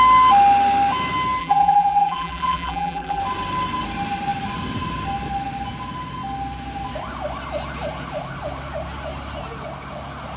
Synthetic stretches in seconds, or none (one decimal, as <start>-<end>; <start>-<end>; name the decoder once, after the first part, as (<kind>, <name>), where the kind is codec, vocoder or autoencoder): 1.4-3.2 (vocoder, BigVGAN v2)

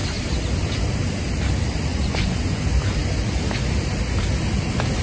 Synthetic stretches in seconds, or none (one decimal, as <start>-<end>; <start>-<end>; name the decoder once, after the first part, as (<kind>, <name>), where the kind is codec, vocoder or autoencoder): 1.9-2.6 (vocoder, Vocos)

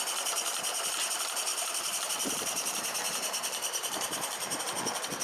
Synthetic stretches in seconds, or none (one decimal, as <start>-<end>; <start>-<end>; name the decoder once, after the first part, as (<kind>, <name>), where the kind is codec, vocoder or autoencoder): 1.5-4.6 (vocoder, BigVGAN v2)

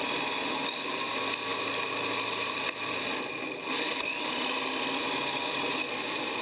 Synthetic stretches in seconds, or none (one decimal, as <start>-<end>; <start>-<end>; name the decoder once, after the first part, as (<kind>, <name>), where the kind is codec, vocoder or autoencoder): none